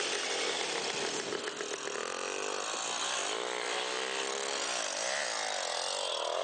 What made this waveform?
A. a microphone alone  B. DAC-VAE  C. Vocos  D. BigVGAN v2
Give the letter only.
A